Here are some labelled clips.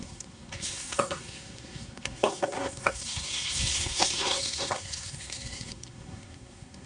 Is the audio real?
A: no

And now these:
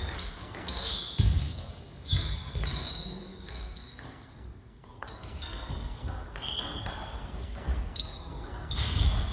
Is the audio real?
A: no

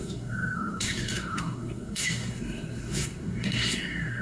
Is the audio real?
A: no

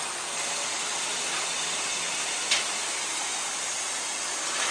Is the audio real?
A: yes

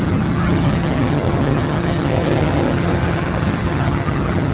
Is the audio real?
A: no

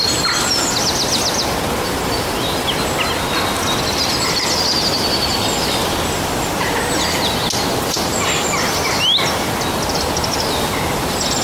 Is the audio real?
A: yes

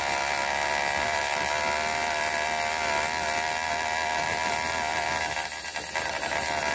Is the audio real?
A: yes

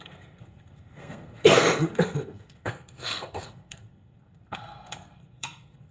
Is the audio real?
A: no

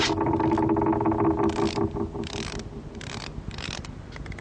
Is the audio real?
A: yes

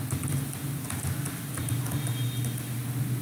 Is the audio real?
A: yes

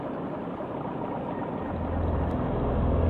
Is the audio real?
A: yes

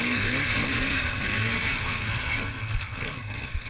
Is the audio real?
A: no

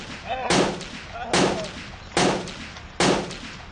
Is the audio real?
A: yes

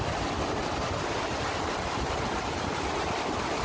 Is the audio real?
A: yes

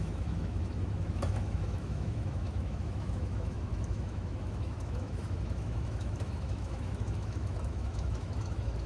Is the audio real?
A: no